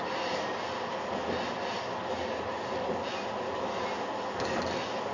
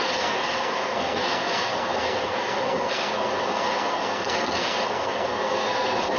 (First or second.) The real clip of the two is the first